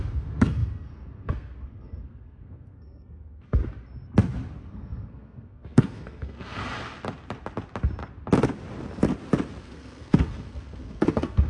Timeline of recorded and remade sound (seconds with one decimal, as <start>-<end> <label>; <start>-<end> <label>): 0.0-3.6 remade; 3.6-4.6 recorded; 4.6-6.6 remade; 6.6-9.6 recorded; 9.6-11.5 remade